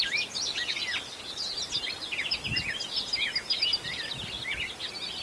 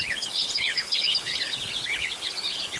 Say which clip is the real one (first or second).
first